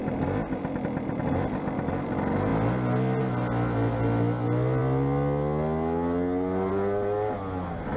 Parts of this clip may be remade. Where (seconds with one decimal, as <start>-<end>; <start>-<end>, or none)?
none